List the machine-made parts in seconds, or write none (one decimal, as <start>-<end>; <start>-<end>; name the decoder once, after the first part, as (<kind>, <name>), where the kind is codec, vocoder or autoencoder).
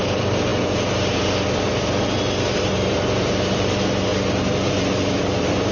0.0-5.7 (vocoder, BigVGAN v2)